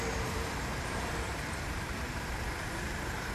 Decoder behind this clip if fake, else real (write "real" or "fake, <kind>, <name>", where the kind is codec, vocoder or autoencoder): fake, vocoder, BigVGAN v2